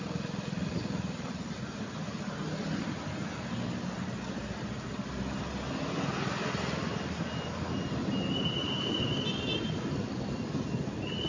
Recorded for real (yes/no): yes